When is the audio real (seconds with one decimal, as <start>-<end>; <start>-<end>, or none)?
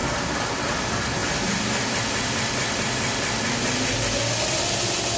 0.0-5.2